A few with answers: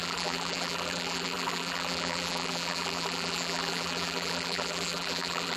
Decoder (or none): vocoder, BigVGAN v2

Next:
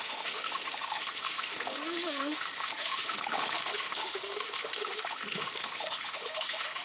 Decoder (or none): autoencoder, DAC-VAE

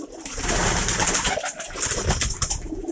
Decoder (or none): none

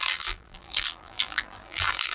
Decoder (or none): vocoder, BigVGAN v2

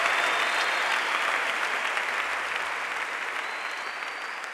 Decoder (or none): none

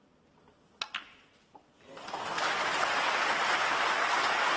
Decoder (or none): none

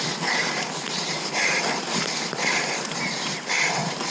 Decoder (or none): vocoder, BigVGAN v2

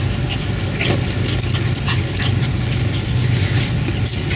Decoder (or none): none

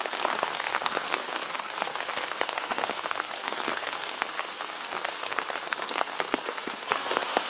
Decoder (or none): codec, SNAC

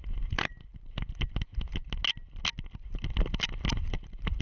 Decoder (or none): none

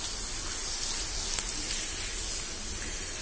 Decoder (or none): none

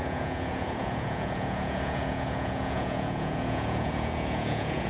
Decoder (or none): vocoder, Vocos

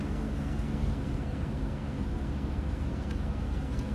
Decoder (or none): codec, SNAC